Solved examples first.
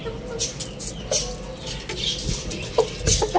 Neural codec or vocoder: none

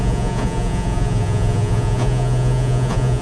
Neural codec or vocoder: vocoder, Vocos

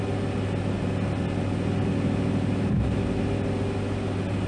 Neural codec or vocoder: none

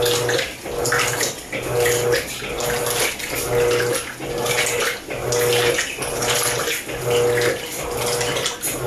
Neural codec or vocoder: none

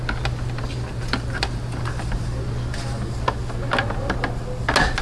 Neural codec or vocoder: none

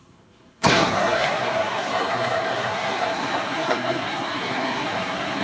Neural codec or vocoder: codec, SNAC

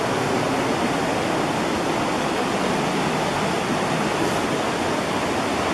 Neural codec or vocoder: none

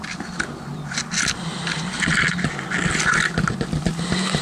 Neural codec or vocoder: none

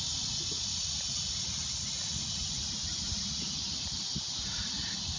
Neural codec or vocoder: none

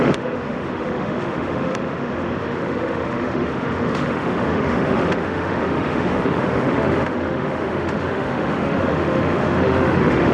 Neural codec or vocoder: autoencoder, DAC-VAE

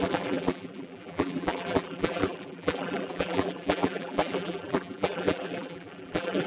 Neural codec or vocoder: vocoder, BigVGAN v2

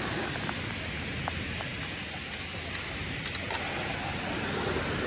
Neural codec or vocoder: none